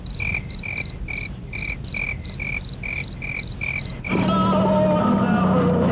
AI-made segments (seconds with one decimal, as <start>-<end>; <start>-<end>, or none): none